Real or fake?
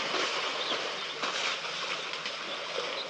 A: real